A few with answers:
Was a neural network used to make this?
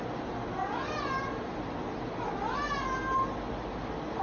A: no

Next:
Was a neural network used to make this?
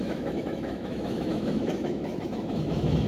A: yes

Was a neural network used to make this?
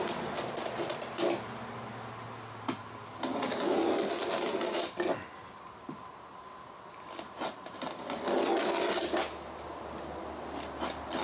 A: no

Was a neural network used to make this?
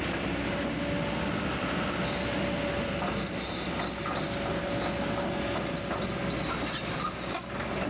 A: no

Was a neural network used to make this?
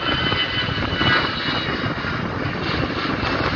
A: no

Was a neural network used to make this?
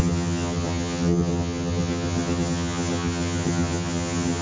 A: yes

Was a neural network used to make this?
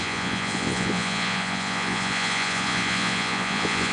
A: yes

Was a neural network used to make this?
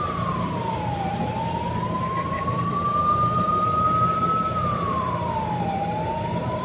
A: yes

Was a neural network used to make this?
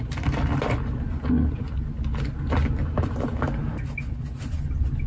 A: no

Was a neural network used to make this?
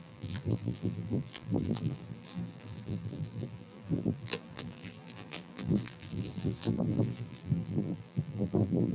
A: yes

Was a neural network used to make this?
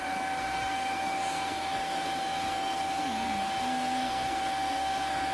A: yes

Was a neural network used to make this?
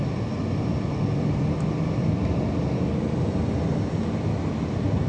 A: no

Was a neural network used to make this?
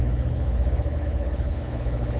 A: yes